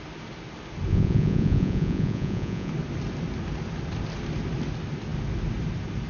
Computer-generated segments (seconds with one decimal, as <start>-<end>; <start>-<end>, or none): 0.9-2.7